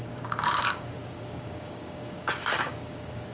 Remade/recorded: remade